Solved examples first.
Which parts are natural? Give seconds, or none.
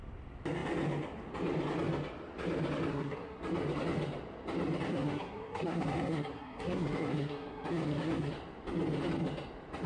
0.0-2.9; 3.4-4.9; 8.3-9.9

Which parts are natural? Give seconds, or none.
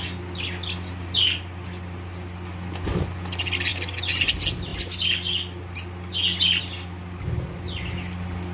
0.0-8.5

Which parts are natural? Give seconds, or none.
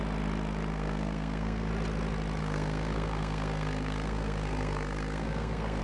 0.0-0.7; 1.7-2.4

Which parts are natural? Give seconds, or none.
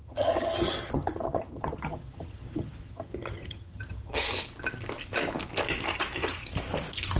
4.3-7.2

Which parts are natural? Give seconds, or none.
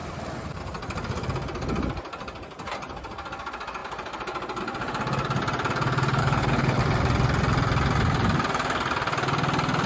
0.0-6.2; 6.8-9.9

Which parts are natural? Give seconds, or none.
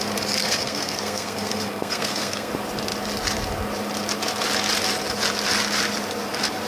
0.0-0.4; 2.5-6.7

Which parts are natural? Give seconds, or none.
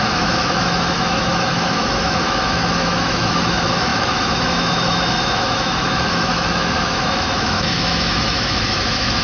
none